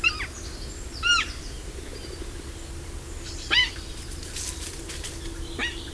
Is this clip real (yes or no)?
yes